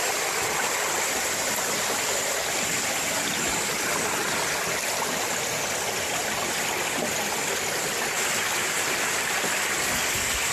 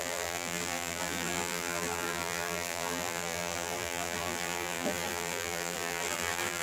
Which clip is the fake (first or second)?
second